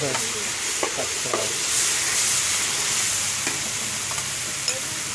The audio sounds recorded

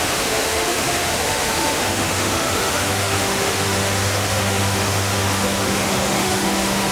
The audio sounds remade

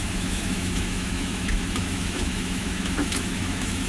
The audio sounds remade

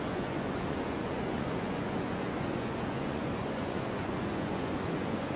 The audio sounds remade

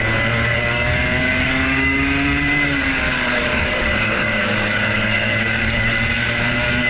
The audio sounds remade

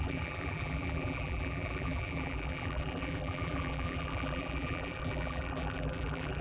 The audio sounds remade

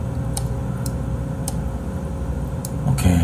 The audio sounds recorded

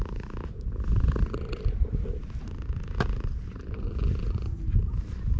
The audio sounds recorded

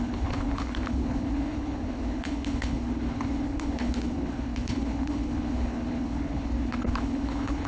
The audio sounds remade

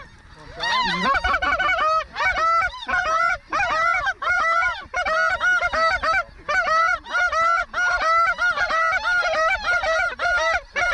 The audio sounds recorded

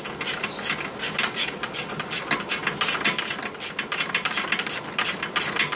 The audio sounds recorded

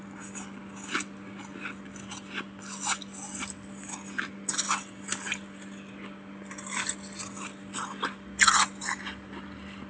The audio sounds recorded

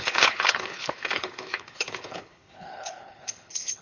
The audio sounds remade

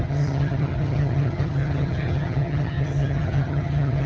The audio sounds remade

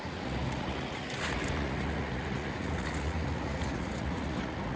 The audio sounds remade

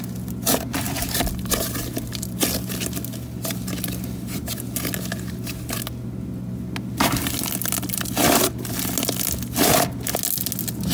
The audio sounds recorded